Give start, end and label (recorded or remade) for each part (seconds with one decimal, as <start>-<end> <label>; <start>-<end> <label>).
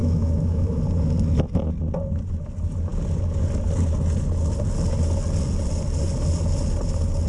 0.0-0.8 remade; 0.8-7.3 recorded